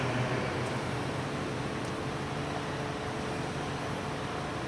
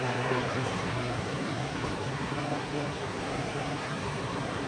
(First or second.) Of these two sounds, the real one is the first